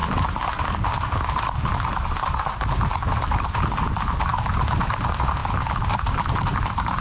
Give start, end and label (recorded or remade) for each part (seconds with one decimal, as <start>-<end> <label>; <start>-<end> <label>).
0.0-1.9 remade; 1.9-7.0 recorded